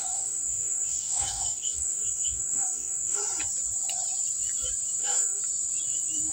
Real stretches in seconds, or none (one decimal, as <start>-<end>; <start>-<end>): 3.2-5.0; 5.4-6.3